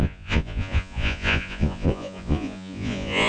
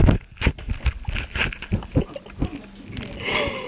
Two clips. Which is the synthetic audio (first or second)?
first